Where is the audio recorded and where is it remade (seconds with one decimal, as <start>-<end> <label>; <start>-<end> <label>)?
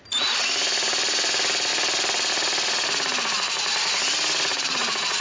0.0-4.5 recorded; 4.5-5.2 remade